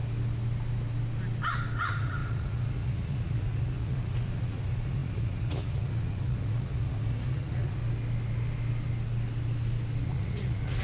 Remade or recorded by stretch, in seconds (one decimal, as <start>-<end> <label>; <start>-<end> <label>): 0.0-1.8 recorded; 1.8-7.8 remade; 7.8-10.0 recorded; 10.0-10.8 remade